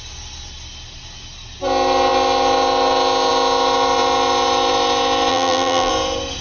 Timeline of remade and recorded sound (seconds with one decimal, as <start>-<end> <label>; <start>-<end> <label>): 0.0-5.3 recorded; 5.3-5.9 remade; 5.9-6.4 recorded